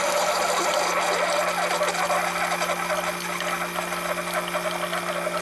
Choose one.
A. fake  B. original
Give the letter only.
B